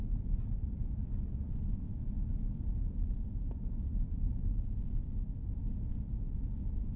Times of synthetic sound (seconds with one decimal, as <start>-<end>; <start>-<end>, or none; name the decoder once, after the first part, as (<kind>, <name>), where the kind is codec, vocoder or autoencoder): none